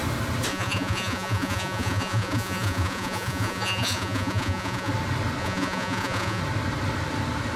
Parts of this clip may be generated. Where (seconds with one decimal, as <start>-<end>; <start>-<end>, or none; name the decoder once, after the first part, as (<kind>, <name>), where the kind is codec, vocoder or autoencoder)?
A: 0.5-4.9 (vocoder, Vocos); 5.4-6.4